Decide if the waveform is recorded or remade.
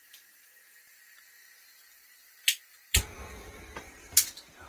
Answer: recorded